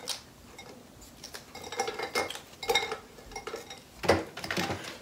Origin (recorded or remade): recorded